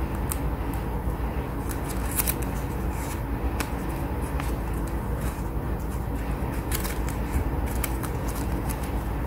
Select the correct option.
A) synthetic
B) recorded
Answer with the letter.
B